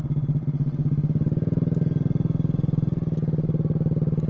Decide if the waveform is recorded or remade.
recorded